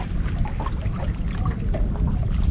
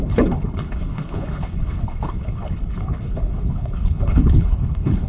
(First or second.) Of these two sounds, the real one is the first